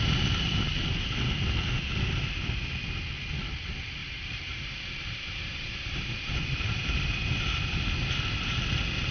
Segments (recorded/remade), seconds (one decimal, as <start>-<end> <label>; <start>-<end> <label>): 0.0-4.0 recorded; 4.0-7.1 remade; 7.1-9.1 recorded